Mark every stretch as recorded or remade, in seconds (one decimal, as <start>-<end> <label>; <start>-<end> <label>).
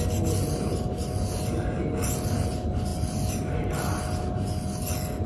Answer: 0.0-5.3 recorded